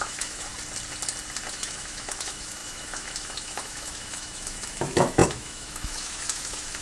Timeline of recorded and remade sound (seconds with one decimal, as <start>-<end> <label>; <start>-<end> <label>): 0.0-0.5 remade; 0.5-1.5 recorded; 1.5-6.8 remade